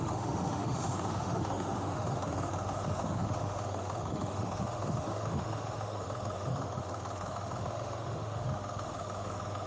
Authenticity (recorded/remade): remade